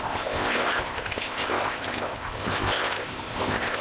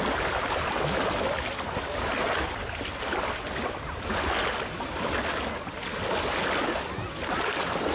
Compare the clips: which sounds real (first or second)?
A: second